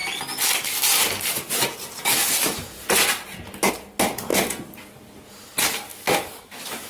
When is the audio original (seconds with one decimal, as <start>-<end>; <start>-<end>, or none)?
0.0-5.9